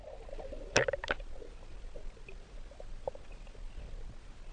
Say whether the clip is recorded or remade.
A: recorded